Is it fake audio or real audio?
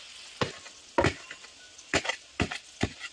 real